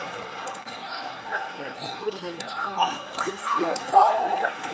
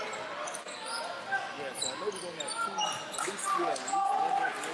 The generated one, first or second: first